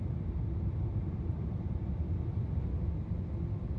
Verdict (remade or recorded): remade